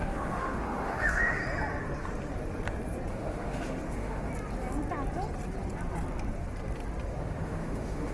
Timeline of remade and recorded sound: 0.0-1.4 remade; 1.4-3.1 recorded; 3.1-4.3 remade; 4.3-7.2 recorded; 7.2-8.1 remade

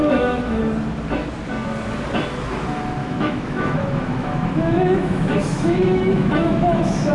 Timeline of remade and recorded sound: 0.0-0.6 remade; 0.6-3.0 recorded; 3.0-7.1 remade

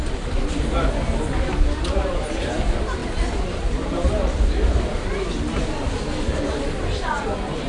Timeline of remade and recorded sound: 0.0-7.7 recorded

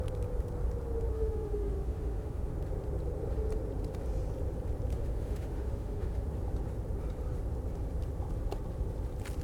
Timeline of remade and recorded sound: 0.0-1.1 recorded; 1.1-2.5 remade; 2.5-4.9 recorded; 4.9-6.3 remade; 6.3-9.4 recorded

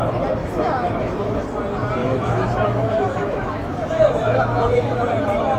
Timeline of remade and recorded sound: 0.0-0.4 recorded; 0.4-1.4 remade; 1.4-2.0 recorded; 2.0-5.0 remade; 5.0-5.6 recorded

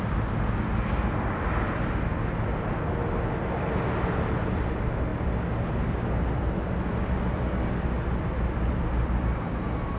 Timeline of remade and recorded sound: 0.0-10.0 recorded

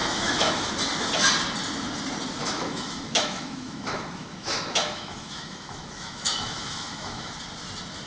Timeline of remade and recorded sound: 0.0-0.7 remade; 0.7-2.4 recorded; 2.4-7.3 remade; 7.3-8.1 recorded

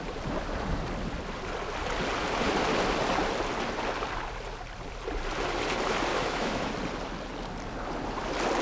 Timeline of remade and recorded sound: 0.0-6.1 recorded; 6.1-6.7 remade; 6.7-8.6 recorded